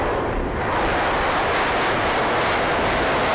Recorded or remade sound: recorded